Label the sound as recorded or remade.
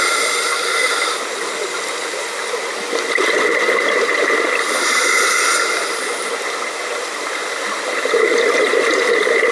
recorded